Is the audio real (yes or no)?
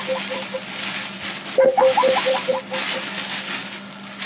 yes